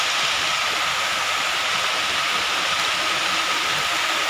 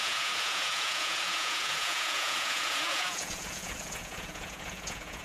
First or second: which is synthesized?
second